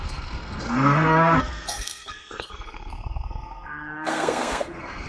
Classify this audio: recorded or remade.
remade